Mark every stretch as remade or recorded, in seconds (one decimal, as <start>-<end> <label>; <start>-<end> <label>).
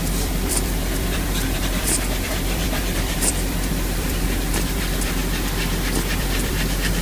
0.0-5.2 remade; 5.2-6.2 recorded; 6.2-7.0 remade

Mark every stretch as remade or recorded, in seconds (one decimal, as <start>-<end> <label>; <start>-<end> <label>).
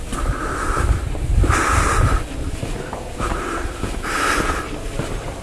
0.0-1.7 remade; 1.7-4.3 recorded; 4.3-5.4 remade